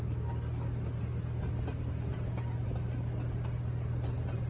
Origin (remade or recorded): recorded